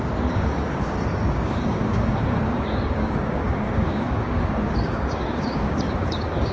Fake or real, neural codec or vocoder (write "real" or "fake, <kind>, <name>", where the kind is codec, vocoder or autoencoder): fake, codec, DAC